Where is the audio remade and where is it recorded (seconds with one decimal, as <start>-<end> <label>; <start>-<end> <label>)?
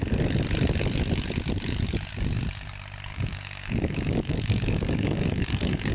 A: 0.0-3.1 recorded; 3.1-5.9 remade